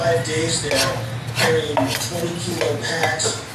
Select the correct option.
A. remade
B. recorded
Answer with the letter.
B